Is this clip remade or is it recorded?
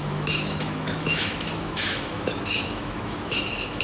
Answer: remade